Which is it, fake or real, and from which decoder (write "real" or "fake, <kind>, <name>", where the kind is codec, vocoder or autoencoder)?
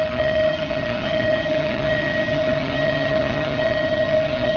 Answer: fake, vocoder, HiFi-GAN